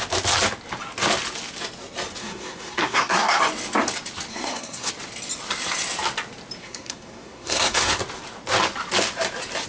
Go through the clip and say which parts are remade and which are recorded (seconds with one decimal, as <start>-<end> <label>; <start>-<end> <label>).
0.0-2.2 recorded; 2.2-3.4 remade; 3.4-4.3 recorded; 4.3-4.9 remade; 4.9-6.6 recorded; 6.6-8.0 remade; 8.0-9.7 recorded

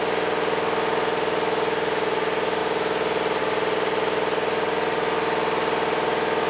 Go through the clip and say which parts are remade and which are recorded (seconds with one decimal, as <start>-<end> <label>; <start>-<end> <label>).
0.0-6.5 recorded